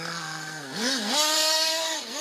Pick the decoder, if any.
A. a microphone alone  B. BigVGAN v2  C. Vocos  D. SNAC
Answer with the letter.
D